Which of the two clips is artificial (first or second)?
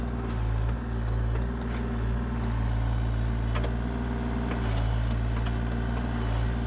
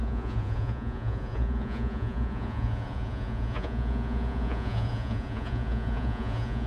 second